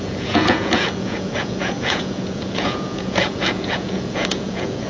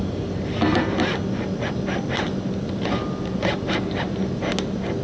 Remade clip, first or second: first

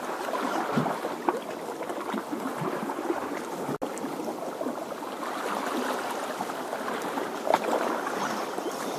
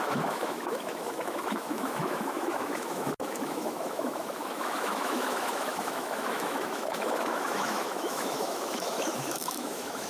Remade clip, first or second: second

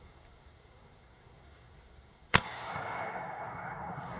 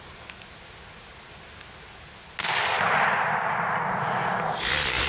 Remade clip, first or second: first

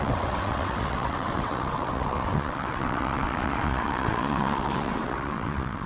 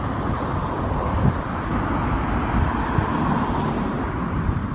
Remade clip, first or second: first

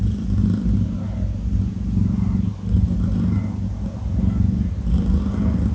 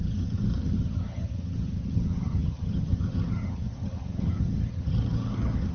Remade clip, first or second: second